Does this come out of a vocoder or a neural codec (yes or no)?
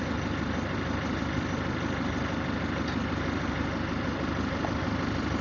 no